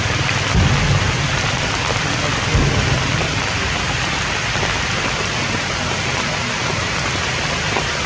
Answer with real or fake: real